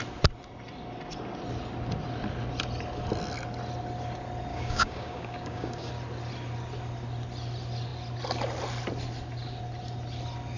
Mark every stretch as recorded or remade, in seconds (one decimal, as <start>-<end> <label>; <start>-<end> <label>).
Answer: 0.0-4.5 recorded; 4.5-5.9 remade; 5.9-10.6 recorded